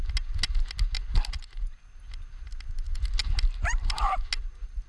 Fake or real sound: real